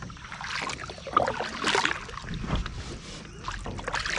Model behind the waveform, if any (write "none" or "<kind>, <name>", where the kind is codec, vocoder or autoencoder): none